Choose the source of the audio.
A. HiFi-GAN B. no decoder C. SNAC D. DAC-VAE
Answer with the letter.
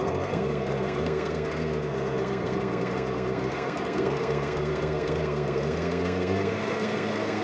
C